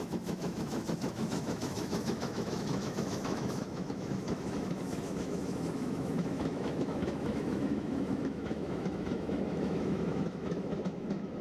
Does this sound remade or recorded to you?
remade